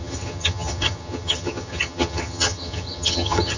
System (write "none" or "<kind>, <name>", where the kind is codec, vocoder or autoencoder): vocoder, HiFi-GAN